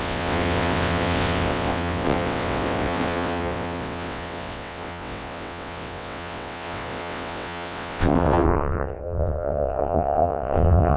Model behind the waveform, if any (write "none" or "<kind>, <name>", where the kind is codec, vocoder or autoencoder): vocoder, WaveNeXt